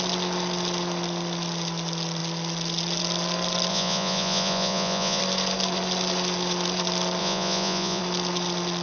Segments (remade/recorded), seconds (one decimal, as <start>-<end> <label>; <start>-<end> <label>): 0.0-3.7 recorded; 3.7-5.2 remade; 5.2-7.2 recorded; 7.2-8.0 remade; 8.0-8.8 recorded